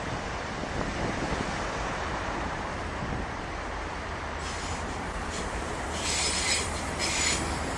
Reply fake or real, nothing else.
fake